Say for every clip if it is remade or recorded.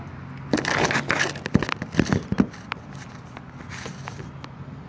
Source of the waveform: recorded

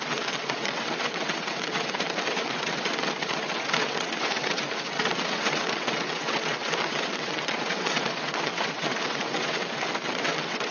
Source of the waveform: remade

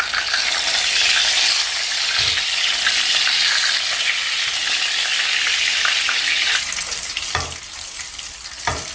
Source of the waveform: recorded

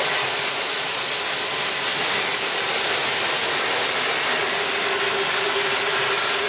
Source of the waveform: recorded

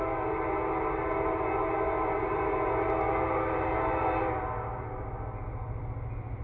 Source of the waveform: recorded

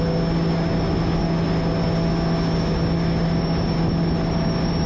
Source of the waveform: recorded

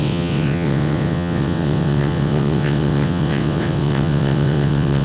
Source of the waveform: remade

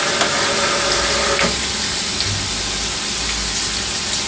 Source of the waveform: recorded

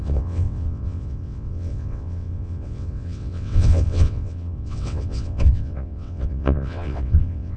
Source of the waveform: remade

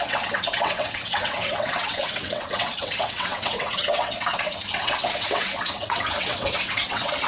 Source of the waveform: remade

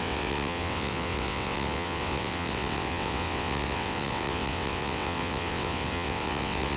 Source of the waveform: remade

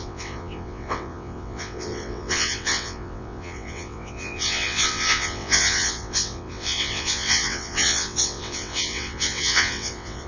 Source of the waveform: remade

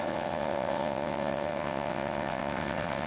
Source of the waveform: remade